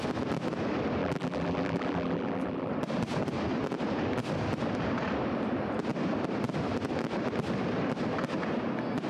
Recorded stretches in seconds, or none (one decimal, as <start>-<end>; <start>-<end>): 0.0-1.0; 2.7-9.1